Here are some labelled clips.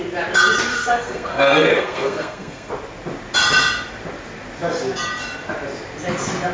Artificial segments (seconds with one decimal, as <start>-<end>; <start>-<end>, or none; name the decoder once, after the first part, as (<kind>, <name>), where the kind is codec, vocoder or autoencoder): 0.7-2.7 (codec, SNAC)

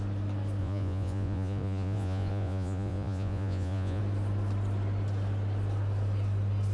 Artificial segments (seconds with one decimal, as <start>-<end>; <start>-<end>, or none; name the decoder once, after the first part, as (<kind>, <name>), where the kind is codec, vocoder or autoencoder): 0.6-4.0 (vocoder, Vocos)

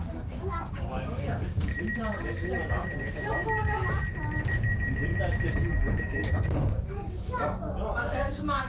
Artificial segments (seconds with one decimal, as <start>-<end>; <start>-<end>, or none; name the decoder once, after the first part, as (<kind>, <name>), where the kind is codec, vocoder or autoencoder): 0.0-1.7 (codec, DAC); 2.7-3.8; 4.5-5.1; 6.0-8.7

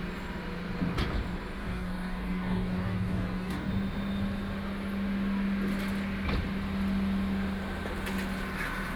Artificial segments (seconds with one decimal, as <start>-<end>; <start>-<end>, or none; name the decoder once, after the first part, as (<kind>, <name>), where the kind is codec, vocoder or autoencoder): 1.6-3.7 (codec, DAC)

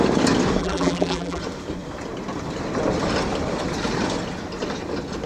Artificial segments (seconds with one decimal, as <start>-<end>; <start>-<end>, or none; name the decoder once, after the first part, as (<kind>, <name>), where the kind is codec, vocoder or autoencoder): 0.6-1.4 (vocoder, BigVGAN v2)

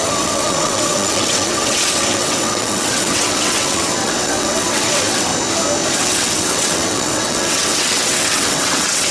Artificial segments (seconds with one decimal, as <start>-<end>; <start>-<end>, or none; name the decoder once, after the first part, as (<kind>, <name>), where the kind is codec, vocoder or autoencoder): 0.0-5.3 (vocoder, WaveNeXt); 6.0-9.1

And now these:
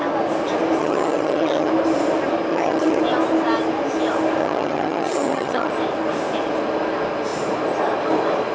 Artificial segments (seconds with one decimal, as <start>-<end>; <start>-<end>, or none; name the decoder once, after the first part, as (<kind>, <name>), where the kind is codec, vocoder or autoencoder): 0.8-1.7 (vocoder, HiFi-GAN); 2.5-3.0; 4.4-5.7